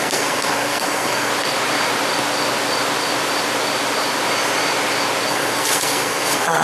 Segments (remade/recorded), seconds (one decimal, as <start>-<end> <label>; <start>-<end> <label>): 0.0-1.3 remade; 1.3-5.3 recorded; 5.3-6.6 remade